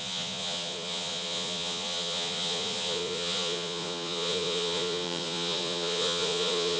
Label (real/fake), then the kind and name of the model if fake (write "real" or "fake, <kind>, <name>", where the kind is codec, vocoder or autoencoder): fake, vocoder, Vocos